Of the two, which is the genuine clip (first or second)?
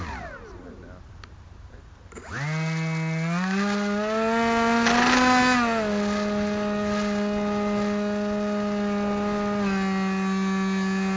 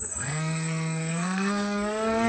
first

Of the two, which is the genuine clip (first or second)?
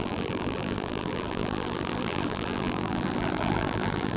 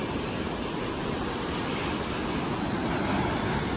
second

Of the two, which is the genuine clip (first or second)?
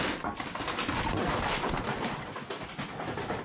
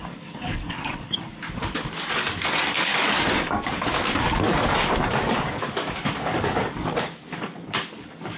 first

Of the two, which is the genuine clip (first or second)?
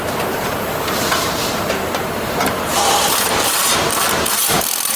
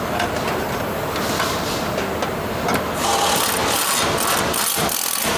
second